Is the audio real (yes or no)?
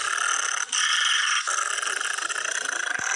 yes